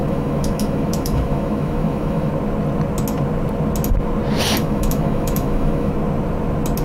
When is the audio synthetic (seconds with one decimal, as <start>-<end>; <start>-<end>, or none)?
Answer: 0.0-2.3; 4.6-5.9